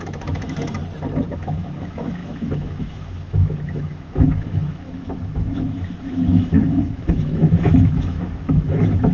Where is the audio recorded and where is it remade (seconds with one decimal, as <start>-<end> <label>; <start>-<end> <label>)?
0.0-0.8 remade; 0.8-1.3 recorded; 1.3-9.1 remade